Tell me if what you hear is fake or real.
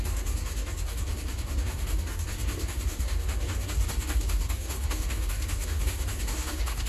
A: fake